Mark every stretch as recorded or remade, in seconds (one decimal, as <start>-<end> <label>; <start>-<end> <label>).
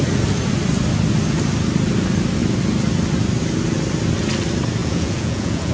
0.0-4.8 recorded; 4.8-5.7 remade